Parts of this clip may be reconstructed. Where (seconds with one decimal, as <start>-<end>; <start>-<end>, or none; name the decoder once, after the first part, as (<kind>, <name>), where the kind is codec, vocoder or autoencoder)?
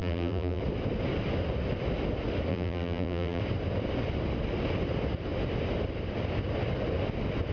0.0-0.6 (vocoder, BigVGAN v2); 2.5-3.4